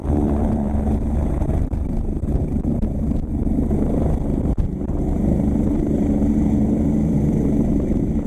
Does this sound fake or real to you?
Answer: fake